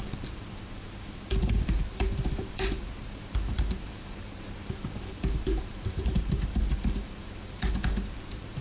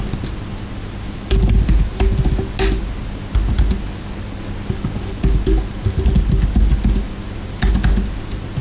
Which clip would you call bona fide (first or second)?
second